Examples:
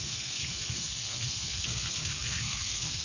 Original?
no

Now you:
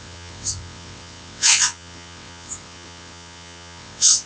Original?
no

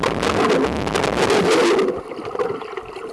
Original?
yes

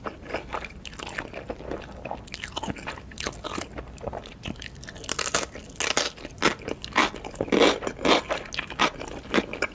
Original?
yes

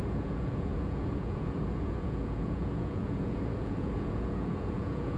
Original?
no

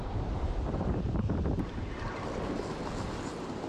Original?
no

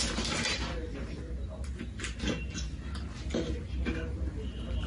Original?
yes